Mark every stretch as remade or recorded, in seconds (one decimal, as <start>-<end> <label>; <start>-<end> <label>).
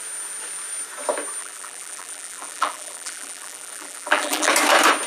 0.0-1.4 recorded; 1.4-4.5 remade; 4.5-5.1 recorded